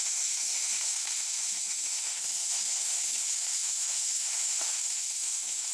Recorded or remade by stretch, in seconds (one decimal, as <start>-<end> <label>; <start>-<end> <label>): 0.0-5.7 remade